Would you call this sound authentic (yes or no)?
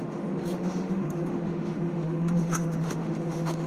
no